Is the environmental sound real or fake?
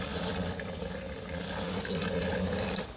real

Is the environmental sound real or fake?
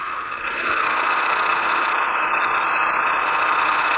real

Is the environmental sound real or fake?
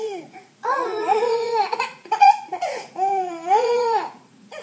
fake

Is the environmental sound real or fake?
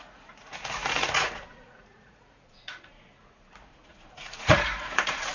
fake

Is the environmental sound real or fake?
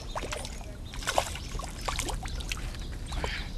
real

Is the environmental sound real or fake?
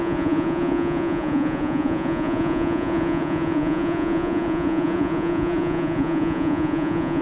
fake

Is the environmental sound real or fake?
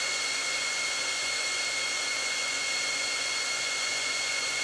fake